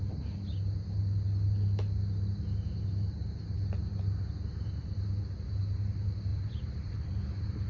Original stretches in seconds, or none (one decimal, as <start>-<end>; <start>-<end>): 0.0-6.3